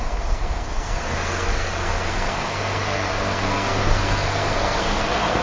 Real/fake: fake